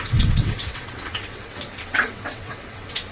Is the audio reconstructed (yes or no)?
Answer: yes